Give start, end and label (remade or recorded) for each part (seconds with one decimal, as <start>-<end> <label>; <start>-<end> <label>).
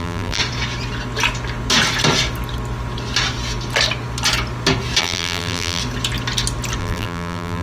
0.0-0.4 remade; 0.4-5.0 recorded; 5.0-5.8 remade; 5.8-6.8 recorded; 6.8-7.6 remade